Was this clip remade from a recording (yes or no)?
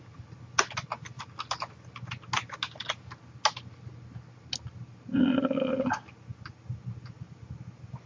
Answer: no